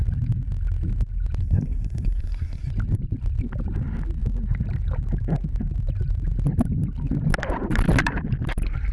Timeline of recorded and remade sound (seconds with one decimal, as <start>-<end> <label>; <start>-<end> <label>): 0.0-1.4 recorded; 1.4-2.7 remade; 2.7-8.9 recorded